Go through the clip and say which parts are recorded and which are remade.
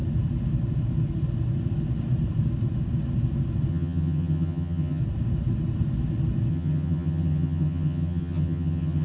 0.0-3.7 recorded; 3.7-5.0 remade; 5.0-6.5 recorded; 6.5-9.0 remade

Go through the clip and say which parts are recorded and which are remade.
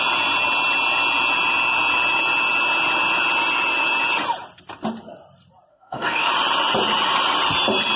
0.0-5.7 recorded; 5.7-6.3 remade; 6.3-8.0 recorded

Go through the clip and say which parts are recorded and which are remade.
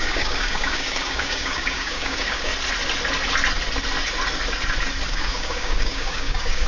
0.0-2.5 remade; 2.5-5.1 recorded; 5.1-6.7 remade